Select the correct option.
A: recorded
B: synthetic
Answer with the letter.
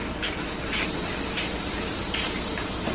A